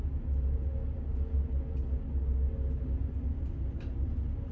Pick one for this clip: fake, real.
real